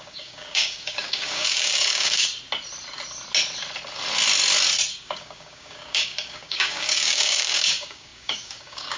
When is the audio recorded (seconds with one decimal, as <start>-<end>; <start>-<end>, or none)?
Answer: 2.3-4.9